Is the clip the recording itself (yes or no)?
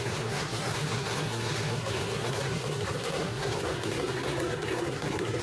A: no